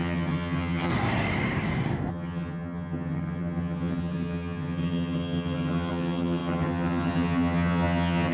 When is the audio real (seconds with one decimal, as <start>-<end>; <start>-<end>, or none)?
0.9-2.1